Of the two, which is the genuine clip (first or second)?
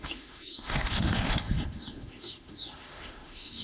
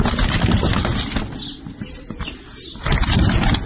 second